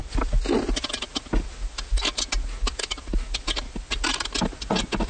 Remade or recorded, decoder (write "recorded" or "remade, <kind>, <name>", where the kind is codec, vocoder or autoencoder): recorded